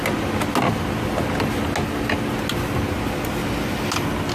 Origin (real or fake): real